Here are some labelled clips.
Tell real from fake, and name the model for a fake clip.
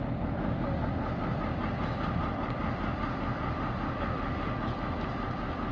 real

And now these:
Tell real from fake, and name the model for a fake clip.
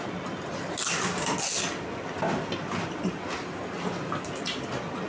real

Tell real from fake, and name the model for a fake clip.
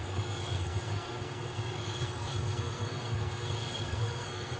fake, codec, SNAC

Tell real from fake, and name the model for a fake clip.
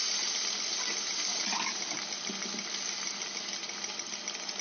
real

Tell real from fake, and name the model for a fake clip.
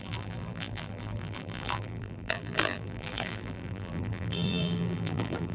fake, vocoder, BigVGAN v2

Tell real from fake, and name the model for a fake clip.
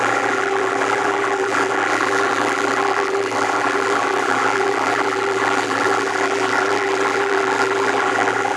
fake, vocoder, BigVGAN v2